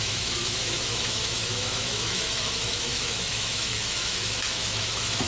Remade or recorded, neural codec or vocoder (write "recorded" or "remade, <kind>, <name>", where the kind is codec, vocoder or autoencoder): remade, autoencoder, DAC-VAE